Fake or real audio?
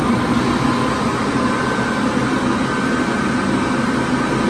real